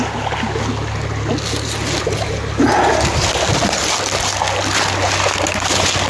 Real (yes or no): yes